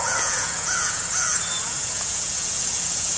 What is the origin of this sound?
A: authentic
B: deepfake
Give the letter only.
B